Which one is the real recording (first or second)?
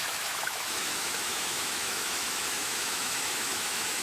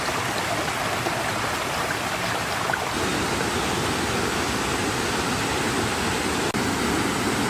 second